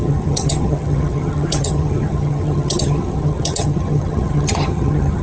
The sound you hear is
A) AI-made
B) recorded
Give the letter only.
A